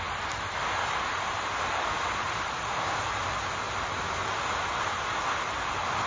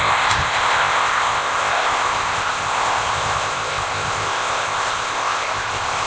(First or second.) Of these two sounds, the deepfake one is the second